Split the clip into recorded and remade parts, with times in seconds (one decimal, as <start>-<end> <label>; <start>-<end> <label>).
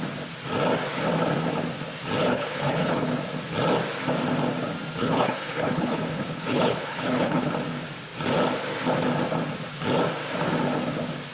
0.0-2.2 recorded; 2.2-3.1 remade; 3.1-5.0 recorded; 5.0-7.5 remade; 7.5-11.3 recorded